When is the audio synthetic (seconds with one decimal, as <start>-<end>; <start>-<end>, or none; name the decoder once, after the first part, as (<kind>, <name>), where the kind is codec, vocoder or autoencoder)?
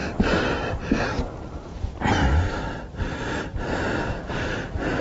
1.7-5.0 (vocoder, BigVGAN v2)